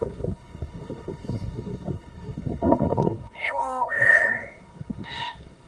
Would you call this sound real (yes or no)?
no